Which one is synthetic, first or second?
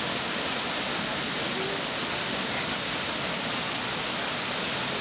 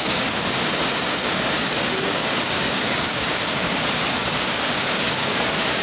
second